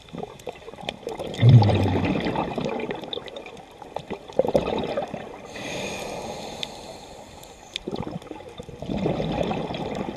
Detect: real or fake fake